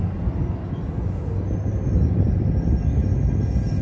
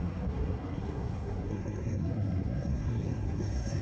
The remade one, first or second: second